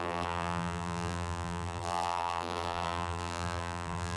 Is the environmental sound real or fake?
fake